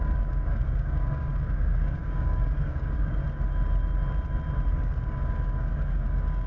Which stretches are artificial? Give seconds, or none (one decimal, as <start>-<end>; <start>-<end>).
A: 0.0-3.2; 4.7-6.5